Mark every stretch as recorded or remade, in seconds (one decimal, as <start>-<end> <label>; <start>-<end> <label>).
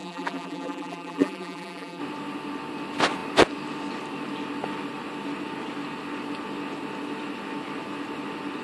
0.0-2.0 remade; 2.0-8.6 recorded